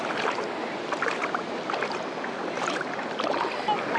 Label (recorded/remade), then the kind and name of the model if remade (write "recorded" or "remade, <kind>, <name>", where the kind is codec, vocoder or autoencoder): recorded